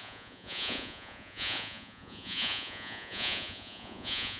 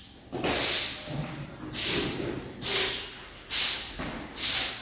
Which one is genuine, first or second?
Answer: second